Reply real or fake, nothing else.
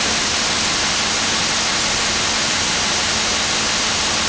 real